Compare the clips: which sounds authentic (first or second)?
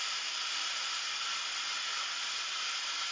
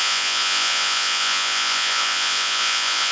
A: first